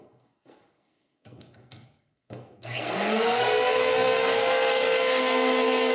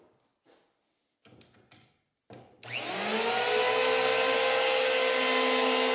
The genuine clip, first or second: second